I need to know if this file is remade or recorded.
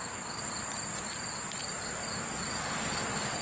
recorded